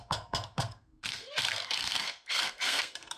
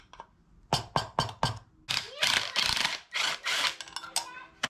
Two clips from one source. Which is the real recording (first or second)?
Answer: second